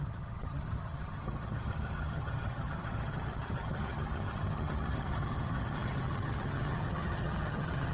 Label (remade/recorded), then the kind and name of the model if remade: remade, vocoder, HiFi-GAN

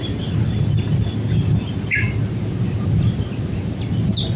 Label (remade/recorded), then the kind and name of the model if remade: recorded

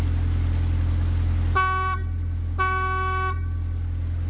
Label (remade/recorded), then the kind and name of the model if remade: recorded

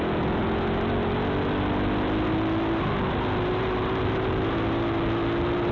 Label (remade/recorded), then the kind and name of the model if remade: recorded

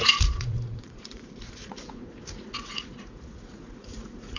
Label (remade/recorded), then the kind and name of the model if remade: remade, vocoder, Vocos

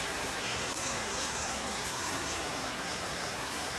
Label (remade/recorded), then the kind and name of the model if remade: remade, codec, SNAC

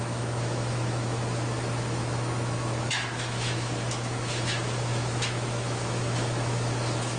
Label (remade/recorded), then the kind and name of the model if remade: remade, autoencoder, DAC-VAE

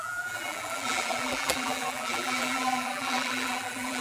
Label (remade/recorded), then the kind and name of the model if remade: remade, vocoder, BigVGAN v2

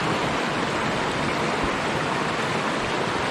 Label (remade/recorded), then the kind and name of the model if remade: recorded